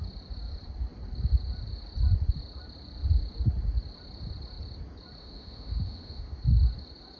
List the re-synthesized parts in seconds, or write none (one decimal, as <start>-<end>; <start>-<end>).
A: 5.2-6.4